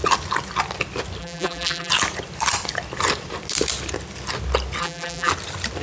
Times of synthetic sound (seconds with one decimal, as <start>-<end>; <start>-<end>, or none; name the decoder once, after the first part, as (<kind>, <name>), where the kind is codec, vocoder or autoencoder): 1.2-1.9 (vocoder, BigVGAN v2); 4.8-5.3